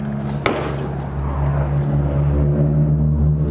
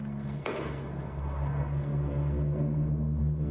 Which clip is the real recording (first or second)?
first